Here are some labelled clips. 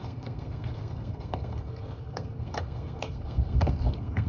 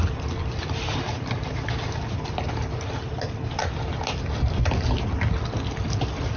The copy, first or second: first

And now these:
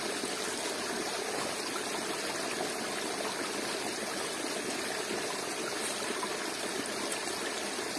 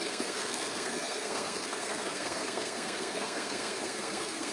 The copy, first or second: second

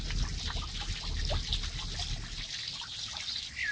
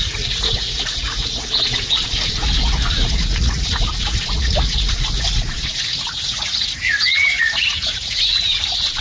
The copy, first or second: second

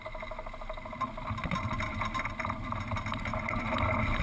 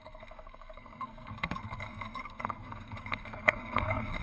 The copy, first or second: second